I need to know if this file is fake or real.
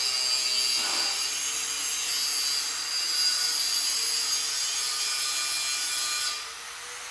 real